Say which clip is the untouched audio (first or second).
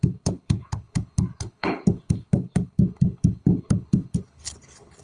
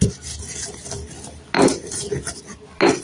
second